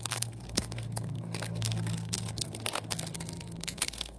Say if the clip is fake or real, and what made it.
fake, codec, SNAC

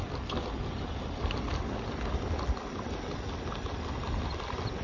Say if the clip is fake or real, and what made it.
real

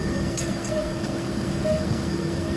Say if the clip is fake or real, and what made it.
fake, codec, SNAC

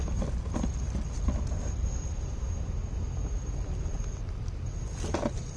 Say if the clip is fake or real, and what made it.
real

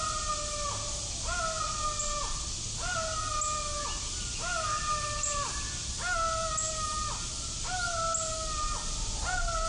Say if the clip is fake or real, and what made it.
real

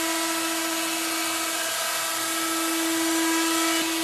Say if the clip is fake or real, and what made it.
real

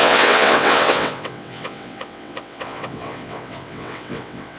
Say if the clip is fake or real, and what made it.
fake, vocoder, WaveNeXt